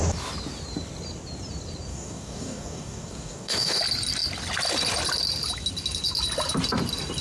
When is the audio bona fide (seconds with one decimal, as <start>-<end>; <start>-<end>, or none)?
0.0-1.9; 3.8-7.2